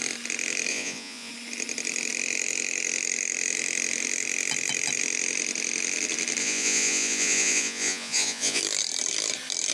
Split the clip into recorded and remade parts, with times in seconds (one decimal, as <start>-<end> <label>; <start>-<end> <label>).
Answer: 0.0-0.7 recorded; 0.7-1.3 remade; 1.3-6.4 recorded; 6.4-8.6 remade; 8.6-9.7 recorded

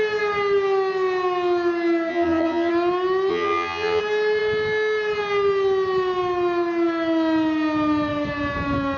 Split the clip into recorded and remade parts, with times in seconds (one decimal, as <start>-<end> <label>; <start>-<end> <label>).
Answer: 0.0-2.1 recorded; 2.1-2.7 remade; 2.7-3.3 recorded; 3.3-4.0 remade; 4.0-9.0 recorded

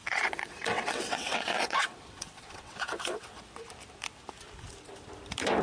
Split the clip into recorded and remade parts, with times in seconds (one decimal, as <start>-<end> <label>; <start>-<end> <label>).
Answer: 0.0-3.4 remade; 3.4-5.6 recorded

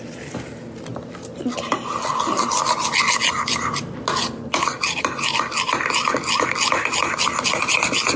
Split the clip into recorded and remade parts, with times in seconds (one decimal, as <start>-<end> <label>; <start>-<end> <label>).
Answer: 0.0-8.2 recorded

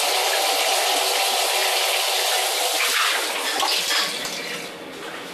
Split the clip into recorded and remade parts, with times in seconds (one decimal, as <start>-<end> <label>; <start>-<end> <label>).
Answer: 0.0-5.3 recorded

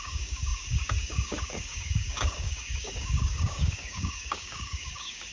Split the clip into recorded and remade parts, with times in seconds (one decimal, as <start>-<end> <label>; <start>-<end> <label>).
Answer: 0.0-5.3 remade

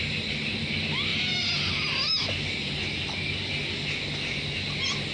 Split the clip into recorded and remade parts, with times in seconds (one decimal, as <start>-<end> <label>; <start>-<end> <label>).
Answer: 0.0-5.1 recorded

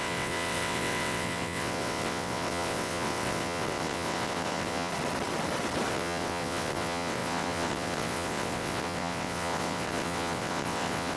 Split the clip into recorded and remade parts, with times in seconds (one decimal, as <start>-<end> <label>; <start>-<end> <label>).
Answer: 0.0-4.9 remade; 4.9-5.9 recorded; 5.9-11.2 remade